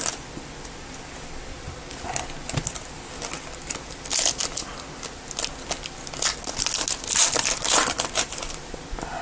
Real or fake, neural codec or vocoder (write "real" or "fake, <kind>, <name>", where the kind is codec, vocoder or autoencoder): real